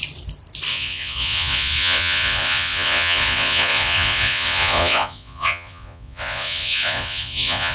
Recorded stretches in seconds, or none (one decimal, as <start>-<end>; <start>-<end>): 0.0-0.7